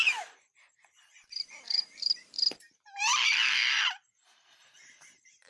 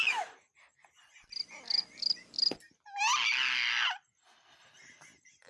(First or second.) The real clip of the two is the second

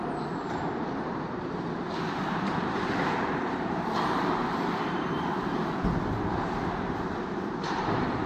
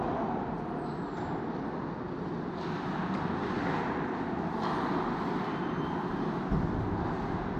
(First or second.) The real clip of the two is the second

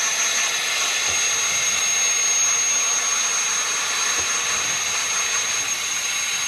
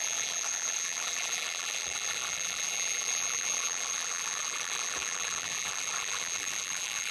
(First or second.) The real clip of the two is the first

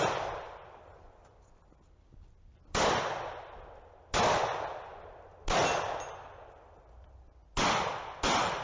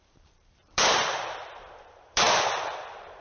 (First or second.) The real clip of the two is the first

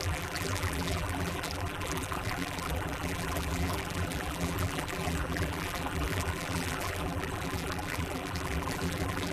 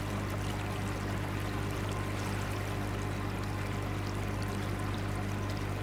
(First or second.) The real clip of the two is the second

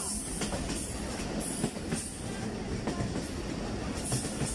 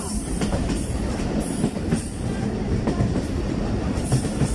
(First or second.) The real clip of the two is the first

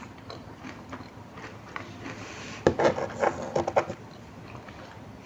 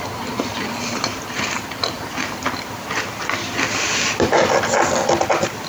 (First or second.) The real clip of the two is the first